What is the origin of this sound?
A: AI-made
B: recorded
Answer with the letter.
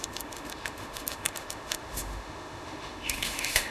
A